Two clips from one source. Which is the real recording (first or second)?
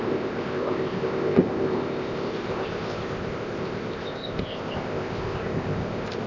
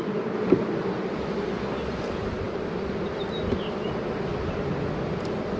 second